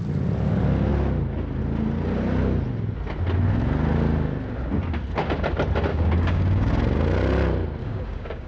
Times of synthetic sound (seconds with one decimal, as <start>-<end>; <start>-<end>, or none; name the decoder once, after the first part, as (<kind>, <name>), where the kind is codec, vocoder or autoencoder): 5.9-6.7 (codec, DAC); 7.8-8.5